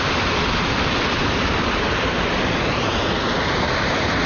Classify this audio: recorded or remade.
recorded